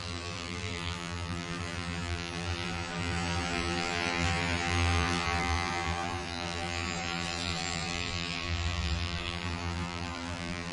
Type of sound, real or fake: fake